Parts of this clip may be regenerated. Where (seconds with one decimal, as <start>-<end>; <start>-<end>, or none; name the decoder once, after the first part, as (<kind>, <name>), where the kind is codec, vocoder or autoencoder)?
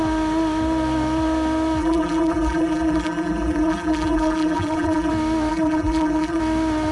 1.8-5.1 (vocoder, BigVGAN v2); 5.5-6.4